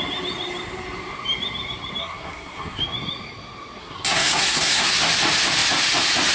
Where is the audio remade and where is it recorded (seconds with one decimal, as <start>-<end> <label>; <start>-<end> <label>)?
0.0-2.0 recorded; 2.0-2.8 remade; 2.8-3.8 recorded; 3.8-4.9 remade; 4.9-6.3 recorded